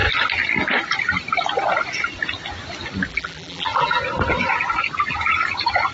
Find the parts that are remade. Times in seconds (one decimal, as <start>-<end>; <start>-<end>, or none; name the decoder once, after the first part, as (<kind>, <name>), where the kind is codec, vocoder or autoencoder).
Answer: 3.1-4.0 (vocoder, BigVGAN v2)